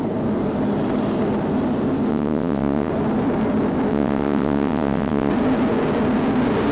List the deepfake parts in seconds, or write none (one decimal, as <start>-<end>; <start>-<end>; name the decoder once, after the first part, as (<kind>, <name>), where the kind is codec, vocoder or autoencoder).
2.1-2.9 (vocoder, WaveNeXt); 3.9-5.3